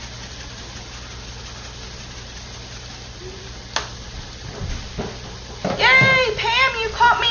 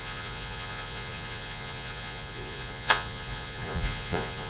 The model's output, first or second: second